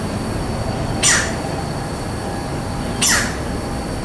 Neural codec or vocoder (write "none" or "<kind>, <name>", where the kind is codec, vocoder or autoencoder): none